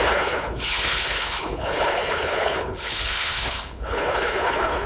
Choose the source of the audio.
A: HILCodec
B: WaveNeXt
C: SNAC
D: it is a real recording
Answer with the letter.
A